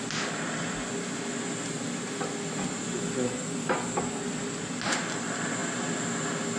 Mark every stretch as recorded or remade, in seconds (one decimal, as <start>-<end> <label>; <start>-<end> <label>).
0.0-6.6 recorded